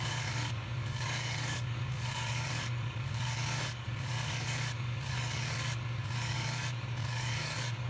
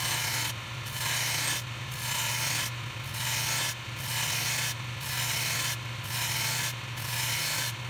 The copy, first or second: first